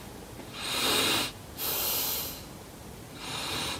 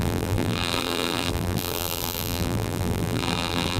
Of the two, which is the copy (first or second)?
second